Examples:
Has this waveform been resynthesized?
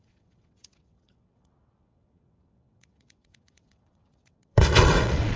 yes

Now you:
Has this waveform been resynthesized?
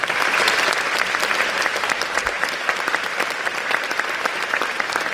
yes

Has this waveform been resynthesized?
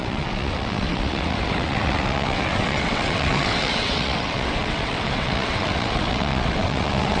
yes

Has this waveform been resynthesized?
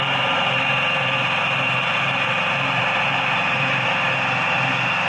yes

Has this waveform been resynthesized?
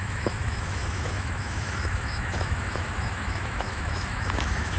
yes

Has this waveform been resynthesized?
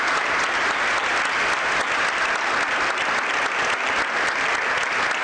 no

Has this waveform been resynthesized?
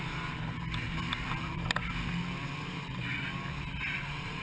yes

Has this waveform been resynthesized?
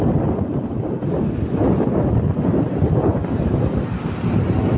no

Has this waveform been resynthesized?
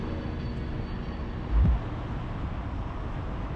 no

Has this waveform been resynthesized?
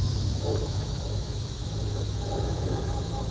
yes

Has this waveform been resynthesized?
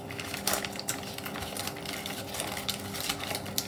no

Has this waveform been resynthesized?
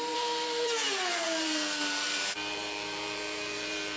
yes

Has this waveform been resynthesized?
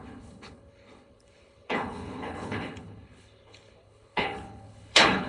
yes